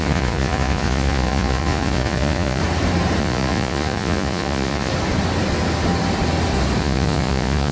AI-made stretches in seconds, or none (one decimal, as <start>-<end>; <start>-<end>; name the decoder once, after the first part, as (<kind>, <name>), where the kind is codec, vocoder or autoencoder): 0.0-2.6 (vocoder, Vocos); 3.2-4.9; 6.8-7.7